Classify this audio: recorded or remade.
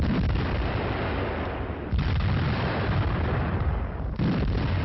recorded